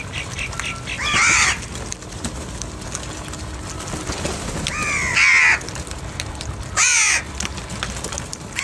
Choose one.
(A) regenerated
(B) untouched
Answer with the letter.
B